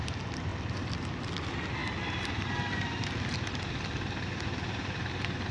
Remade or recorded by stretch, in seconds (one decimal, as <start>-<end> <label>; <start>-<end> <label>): 0.0-5.5 recorded